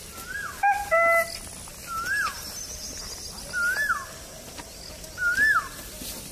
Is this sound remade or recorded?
recorded